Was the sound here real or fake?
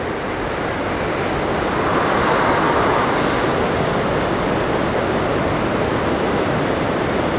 real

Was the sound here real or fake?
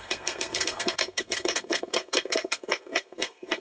fake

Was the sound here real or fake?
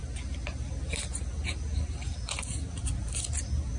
real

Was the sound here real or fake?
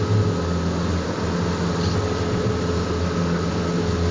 real